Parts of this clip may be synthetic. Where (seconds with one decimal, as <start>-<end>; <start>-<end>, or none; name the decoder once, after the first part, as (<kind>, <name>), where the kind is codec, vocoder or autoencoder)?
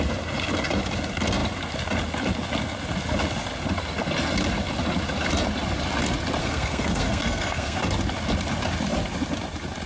6.4-7.8 (codec, SNAC)